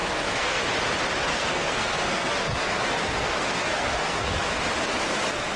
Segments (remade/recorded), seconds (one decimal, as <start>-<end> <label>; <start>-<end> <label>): 0.0-0.6 remade; 0.6-1.3 recorded; 1.3-4.6 remade; 4.6-5.6 recorded